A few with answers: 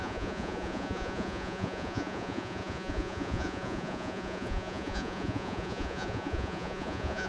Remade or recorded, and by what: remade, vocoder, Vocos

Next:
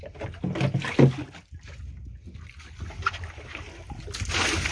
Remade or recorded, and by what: recorded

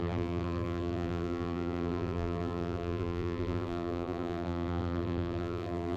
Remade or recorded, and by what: remade, vocoder, BigVGAN v2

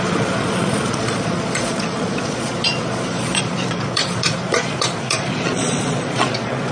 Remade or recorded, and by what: remade, vocoder, Vocos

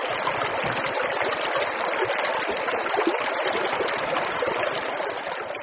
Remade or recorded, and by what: recorded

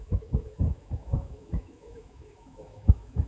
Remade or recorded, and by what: remade, autoencoder, DAC-VAE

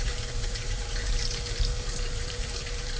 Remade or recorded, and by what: remade, vocoder, BigVGAN v2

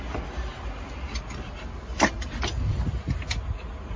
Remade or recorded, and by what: recorded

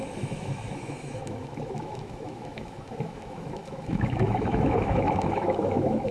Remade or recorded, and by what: remade, autoencoder, DAC-VAE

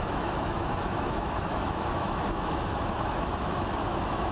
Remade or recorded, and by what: remade, autoencoder, DAC-VAE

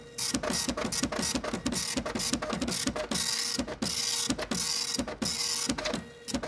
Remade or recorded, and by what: recorded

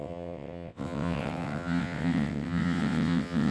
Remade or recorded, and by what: remade, vocoder, WaveNeXt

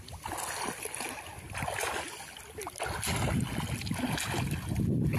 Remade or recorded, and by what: recorded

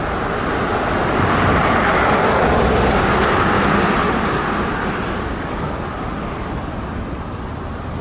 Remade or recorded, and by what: recorded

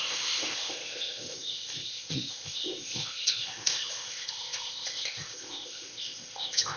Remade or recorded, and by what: remade, codec, ZipCodec